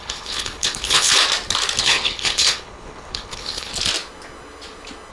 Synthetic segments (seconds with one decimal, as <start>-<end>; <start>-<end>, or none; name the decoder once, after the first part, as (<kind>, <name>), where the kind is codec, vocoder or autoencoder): 0.0-1.1 (codec, HILCodec); 1.8-3.7